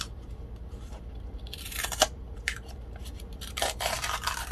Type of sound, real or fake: fake